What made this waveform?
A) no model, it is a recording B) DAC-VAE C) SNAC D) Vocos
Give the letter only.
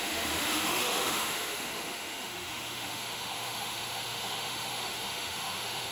B